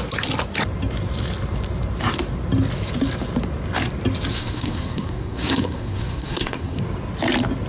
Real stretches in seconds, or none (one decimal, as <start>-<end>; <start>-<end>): 0.0-4.3; 6.8-7.7